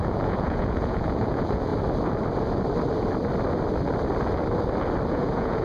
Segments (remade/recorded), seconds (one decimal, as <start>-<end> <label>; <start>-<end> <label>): 0.0-1.7 remade; 1.7-5.1 recorded; 5.1-5.6 remade